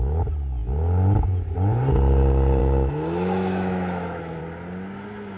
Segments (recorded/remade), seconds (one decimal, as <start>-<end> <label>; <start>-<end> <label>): 0.0-2.6 recorded; 2.6-4.4 remade; 4.4-5.4 recorded